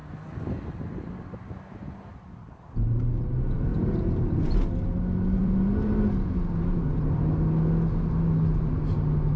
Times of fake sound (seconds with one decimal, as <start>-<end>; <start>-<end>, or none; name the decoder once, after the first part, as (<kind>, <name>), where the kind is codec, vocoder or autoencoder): 3.7-4.6 (vocoder, BigVGAN v2); 5.4-5.9